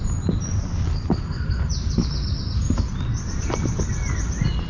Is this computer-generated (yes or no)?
no